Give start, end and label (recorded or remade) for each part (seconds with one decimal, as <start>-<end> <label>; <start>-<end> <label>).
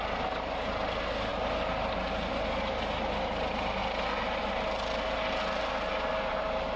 0.0-6.8 recorded